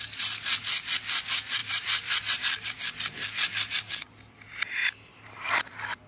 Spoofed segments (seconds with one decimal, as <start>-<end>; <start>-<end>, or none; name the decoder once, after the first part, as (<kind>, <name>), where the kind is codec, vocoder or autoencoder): 1.6-2.8 (vocoder, BigVGAN v2); 4.8-5.5